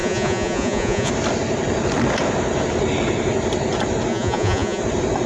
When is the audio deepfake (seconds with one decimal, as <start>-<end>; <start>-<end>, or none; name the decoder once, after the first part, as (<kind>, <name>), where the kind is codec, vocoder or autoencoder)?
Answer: 0.0-1.1 (vocoder, Vocos); 4.1-4.8